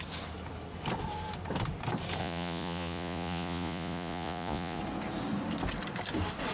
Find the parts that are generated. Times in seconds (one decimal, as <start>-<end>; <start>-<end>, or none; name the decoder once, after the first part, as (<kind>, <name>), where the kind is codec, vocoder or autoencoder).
2.2-4.8 (vocoder, Vocos)